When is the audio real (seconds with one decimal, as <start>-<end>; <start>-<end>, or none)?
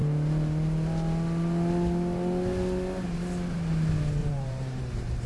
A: 0.0-4.2; 4.8-5.3